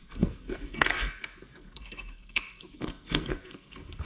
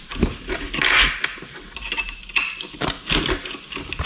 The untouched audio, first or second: second